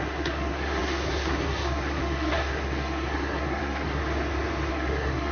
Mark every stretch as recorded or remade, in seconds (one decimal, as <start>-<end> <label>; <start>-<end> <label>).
0.0-4.0 remade; 4.0-4.7 recorded; 4.7-5.3 remade